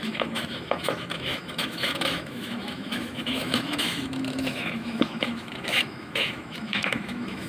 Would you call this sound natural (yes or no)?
no